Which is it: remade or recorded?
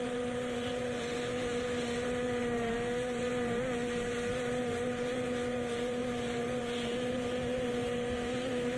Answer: remade